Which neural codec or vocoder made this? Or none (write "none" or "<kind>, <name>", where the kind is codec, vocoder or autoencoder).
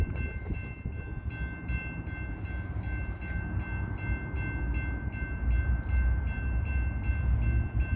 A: none